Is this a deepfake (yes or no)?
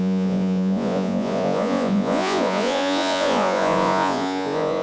yes